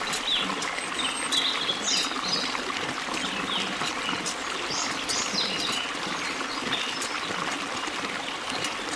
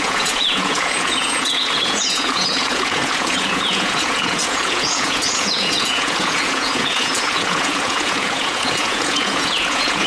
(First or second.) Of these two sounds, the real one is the first